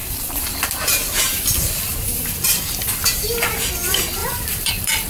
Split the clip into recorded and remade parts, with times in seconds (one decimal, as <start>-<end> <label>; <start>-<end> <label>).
0.0-2.6 remade; 2.6-3.0 recorded; 3.0-3.7 remade; 3.7-4.2 recorded; 4.2-5.1 remade